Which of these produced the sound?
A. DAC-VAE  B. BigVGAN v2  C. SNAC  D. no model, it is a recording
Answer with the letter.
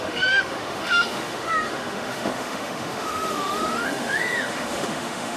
A